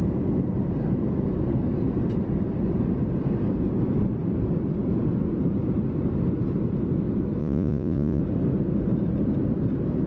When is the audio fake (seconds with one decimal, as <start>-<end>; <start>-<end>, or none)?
7.4-8.2